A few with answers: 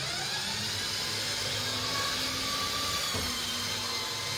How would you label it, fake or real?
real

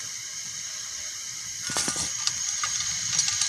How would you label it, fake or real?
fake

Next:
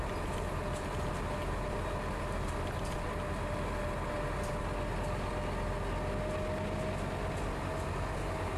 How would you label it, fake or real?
real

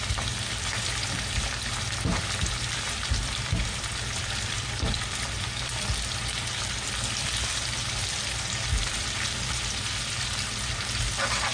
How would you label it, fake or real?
fake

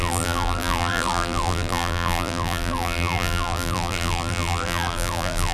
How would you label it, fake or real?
fake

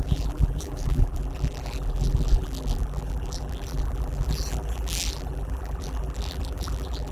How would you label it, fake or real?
fake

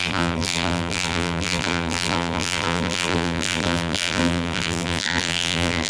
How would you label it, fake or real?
fake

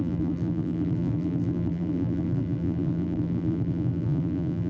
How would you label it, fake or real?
fake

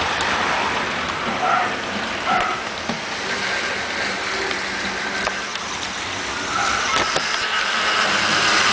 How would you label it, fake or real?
real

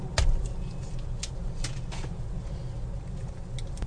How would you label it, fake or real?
real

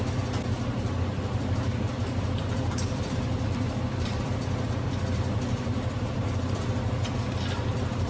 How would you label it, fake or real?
fake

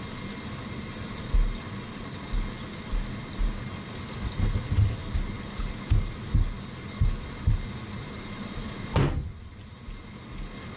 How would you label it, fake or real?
real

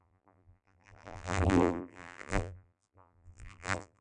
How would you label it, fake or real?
fake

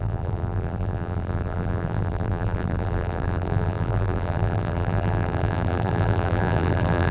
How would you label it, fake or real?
fake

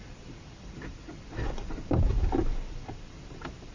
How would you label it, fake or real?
fake